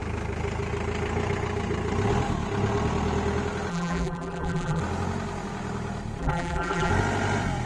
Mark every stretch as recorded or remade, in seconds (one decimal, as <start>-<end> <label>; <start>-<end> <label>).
0.0-3.7 recorded; 3.7-4.8 remade; 4.8-6.2 recorded; 6.2-6.9 remade; 6.9-7.7 recorded